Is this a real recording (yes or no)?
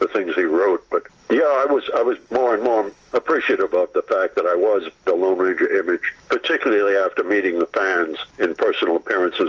yes